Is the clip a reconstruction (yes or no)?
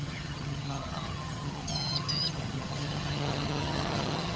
yes